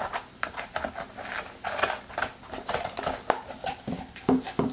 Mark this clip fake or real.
real